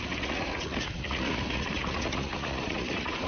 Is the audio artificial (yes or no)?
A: yes